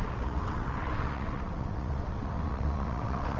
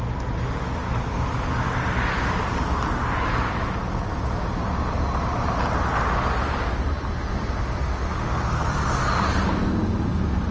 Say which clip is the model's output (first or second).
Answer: first